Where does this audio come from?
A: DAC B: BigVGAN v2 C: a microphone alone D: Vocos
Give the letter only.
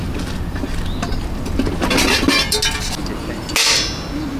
C